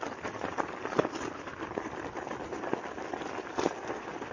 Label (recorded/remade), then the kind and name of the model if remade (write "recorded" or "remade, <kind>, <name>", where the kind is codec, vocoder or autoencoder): recorded